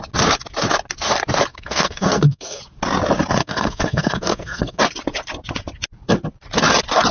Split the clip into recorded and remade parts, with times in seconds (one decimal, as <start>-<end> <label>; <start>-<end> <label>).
0.0-1.5 recorded; 1.5-2.6 remade; 2.6-3.4 recorded; 3.4-4.8 remade; 4.8-7.1 recorded